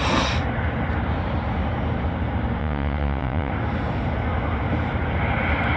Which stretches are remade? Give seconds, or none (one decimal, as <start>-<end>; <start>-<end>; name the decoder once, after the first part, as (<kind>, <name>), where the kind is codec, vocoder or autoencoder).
2.6-3.5 (vocoder, WaveNeXt)